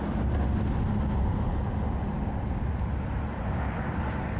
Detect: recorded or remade recorded